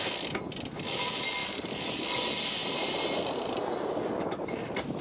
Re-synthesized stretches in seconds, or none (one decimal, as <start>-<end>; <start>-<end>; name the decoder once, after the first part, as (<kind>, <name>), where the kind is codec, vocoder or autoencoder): 1.4-2.0 (vocoder, BigVGAN v2); 2.6-3.7